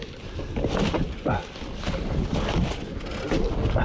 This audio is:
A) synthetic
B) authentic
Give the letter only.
B